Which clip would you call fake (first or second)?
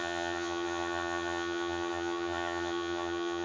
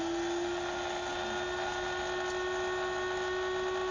first